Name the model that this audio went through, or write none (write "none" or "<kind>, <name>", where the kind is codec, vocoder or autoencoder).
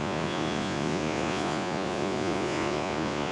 vocoder, Vocos